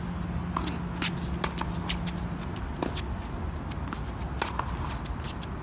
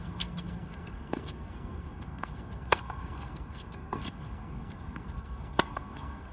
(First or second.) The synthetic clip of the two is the second